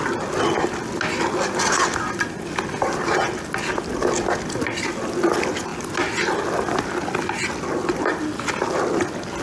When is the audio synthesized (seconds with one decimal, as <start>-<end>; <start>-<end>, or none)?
none